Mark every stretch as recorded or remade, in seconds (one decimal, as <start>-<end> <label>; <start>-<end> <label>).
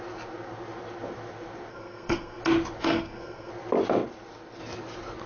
0.0-1.7 recorded; 1.7-2.4 remade; 2.4-2.8 recorded; 2.8-3.5 remade; 3.5-5.3 recorded